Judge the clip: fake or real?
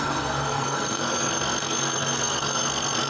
fake